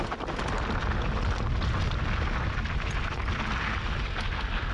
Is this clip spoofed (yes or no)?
no